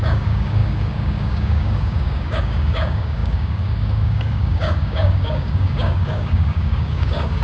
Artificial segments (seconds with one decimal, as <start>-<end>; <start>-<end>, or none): 0.0-7.4